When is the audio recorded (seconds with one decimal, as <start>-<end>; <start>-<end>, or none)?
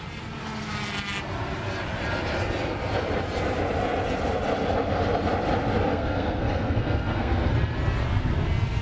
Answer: 0.0-5.9; 7.5-8.8